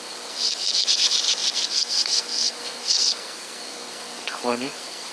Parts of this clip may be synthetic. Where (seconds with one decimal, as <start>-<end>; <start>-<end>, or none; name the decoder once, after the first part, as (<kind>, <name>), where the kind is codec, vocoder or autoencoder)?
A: 0.0-5.1 (codec, SNAC)